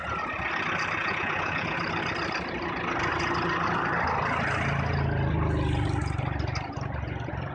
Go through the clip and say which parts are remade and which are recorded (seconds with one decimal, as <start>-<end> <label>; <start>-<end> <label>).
0.0-1.0 recorded; 1.0-1.8 remade; 1.8-7.5 recorded